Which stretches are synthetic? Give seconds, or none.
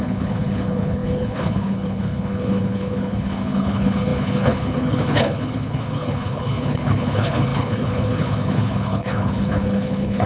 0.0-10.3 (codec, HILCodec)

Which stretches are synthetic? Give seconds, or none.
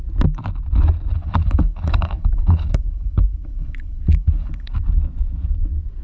1.1-4.7 (codec, HILCodec)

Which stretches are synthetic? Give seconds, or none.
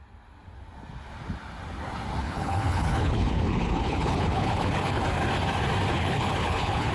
2.2-5.0 (codec, HILCodec); 5.9-6.9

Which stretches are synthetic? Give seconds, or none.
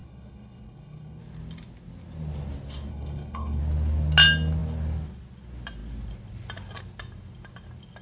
0.0-1.2 (codec, HILCodec); 2.9-3.6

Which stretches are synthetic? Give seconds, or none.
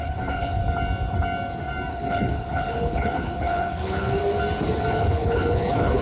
0.0-0.6 (codec, HILCodec); 1.9-4.2; 4.9-6.0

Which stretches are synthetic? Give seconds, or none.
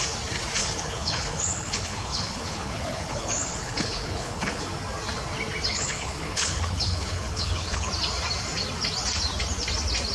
0.6-4.6 (codec, HILCodec); 5.7-7.9